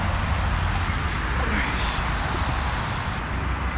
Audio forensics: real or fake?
real